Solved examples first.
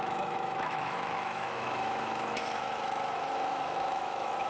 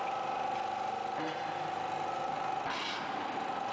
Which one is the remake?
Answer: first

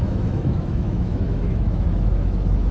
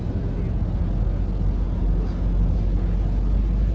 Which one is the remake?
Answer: first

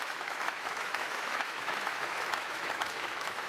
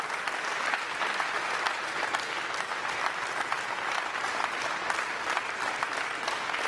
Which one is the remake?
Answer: first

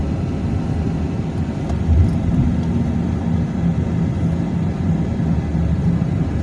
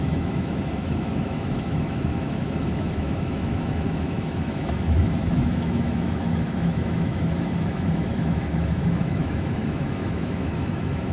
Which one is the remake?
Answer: second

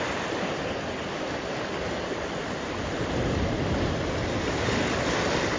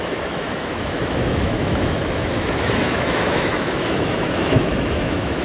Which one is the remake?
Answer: second